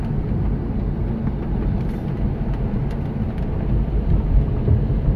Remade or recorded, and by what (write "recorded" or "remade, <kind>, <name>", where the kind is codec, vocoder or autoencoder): recorded